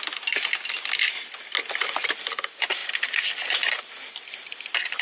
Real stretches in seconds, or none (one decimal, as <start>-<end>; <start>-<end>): 0.0-5.0